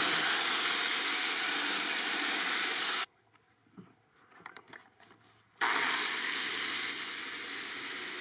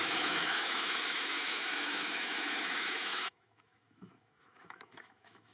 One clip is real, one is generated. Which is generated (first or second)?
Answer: second